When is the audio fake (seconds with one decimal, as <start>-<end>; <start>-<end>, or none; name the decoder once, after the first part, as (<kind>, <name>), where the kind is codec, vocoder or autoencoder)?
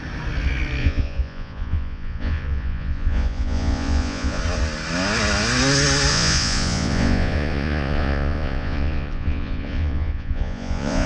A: 0.8-4.4 (vocoder, Vocos); 6.1-11.1